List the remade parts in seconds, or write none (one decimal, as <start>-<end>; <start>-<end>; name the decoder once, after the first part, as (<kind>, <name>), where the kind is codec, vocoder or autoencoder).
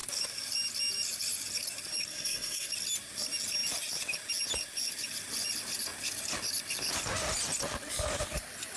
2.1-2.7 (codec, SNAC)